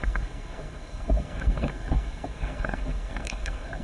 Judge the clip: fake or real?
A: fake